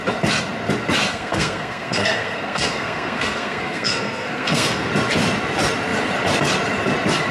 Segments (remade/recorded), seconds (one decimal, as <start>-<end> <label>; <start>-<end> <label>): 0.0-1.1 recorded; 1.1-4.9 remade; 4.9-7.3 recorded